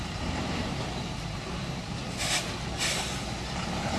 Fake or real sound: fake